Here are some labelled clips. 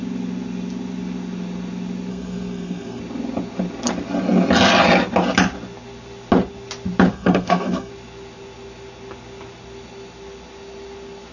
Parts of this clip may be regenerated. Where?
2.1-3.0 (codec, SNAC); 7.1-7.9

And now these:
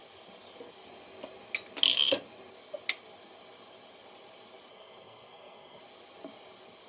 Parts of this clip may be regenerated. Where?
4.7-5.8 (codec, SNAC)

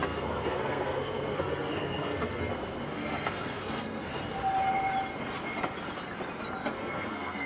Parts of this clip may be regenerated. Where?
0.0-4.2 (codec, SNAC); 6.6-7.5

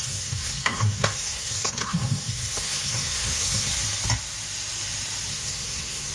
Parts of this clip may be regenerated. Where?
0.0-3.7 (codec, SNAC); 5.3-6.1